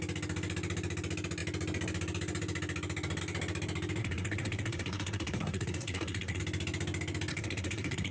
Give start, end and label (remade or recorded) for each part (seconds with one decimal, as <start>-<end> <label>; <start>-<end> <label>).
0.0-4.0 recorded; 4.0-6.4 remade; 6.4-7.3 recorded; 7.3-8.1 remade